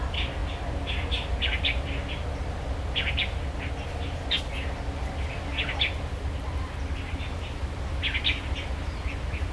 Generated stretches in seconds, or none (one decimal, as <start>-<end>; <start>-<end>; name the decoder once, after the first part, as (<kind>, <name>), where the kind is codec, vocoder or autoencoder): none